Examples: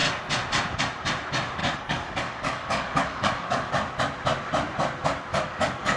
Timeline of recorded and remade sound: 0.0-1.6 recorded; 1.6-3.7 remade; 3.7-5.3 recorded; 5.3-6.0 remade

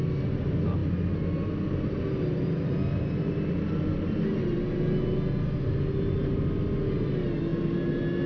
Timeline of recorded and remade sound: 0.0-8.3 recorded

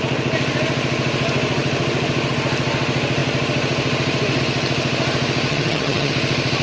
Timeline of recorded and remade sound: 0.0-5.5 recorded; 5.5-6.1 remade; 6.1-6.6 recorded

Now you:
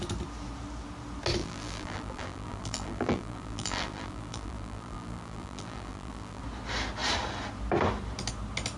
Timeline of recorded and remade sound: 0.0-1.4 recorded; 1.4-6.4 remade; 6.4-8.8 recorded

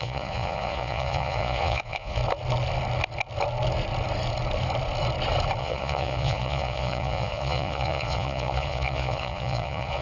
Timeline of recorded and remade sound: 0.0-2.2 remade; 2.2-5.6 recorded; 5.6-10.0 remade